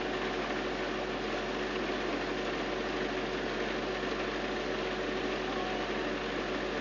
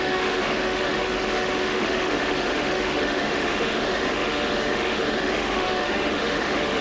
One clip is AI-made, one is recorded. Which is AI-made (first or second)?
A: second